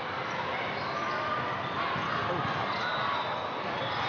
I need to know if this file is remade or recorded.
recorded